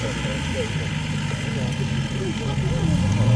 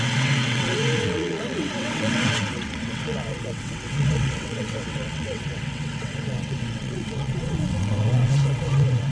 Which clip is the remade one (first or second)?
second